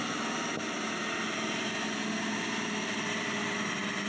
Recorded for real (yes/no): yes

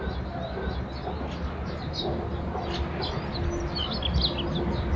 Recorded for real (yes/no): yes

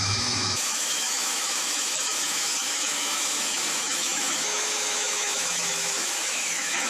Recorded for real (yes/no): no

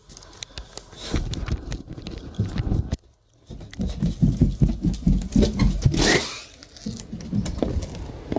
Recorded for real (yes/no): yes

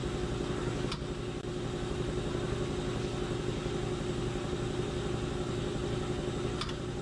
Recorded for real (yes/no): yes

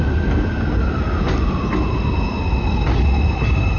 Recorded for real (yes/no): yes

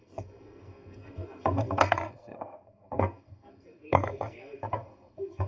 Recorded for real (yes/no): no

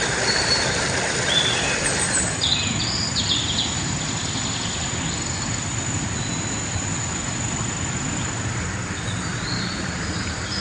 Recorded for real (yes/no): yes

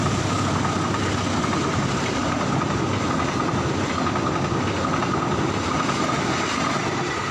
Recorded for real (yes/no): yes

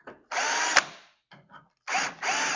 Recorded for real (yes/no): yes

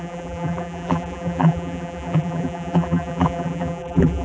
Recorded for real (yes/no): no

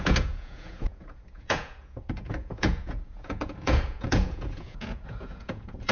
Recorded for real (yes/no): no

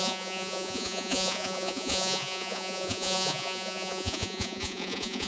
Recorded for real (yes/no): no